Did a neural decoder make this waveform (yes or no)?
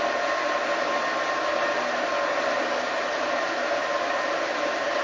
no